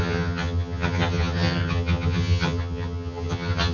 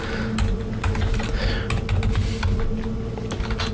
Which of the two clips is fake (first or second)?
first